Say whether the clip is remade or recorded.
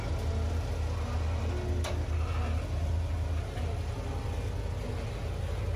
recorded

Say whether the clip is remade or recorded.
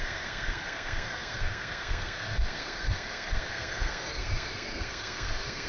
remade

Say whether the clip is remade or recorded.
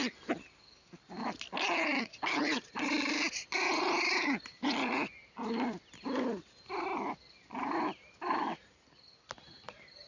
recorded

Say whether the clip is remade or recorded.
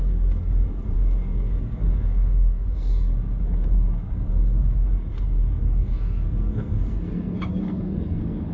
remade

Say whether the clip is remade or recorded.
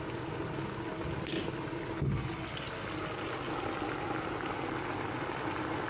recorded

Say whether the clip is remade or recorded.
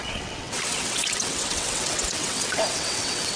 remade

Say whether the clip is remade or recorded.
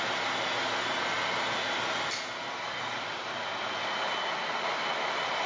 recorded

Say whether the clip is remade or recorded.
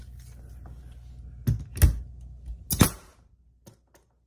recorded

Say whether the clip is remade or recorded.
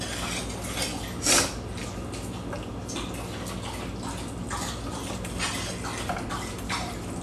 recorded